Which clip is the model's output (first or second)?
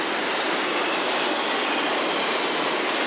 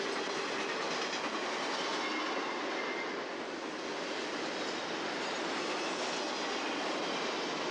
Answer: first